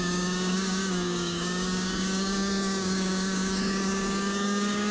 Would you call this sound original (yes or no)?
no